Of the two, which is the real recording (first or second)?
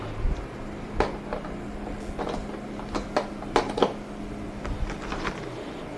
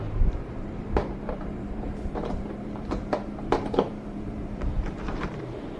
first